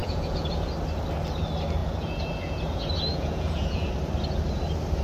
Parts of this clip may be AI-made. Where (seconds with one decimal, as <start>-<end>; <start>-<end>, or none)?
0.0-0.7; 1.8-2.6; 3.1-3.9